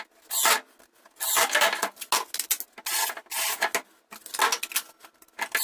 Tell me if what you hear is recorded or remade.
recorded